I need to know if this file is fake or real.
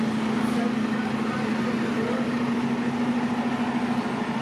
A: real